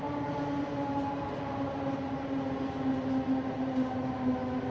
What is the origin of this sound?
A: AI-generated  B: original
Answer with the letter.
B